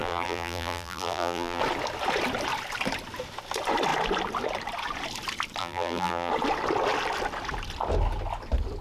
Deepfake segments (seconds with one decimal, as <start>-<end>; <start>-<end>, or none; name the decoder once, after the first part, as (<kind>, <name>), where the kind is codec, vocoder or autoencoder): 0.0-1.6 (vocoder, BigVGAN v2); 5.6-6.3